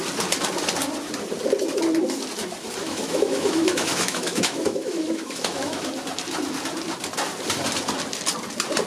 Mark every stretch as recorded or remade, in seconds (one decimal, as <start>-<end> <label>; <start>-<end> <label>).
0.0-2.8 recorded; 2.8-5.9 remade; 5.9-8.9 recorded